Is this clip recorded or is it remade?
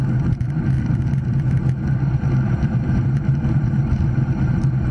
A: remade